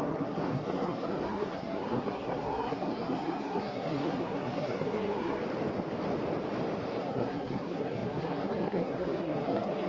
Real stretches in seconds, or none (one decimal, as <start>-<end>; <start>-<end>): 5.4-7.0